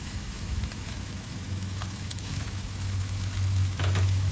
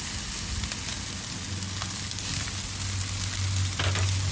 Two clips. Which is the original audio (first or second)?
second